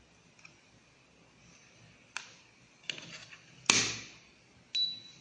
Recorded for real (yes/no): yes